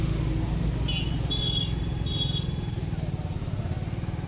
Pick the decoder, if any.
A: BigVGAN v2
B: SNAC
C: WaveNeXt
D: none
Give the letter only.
D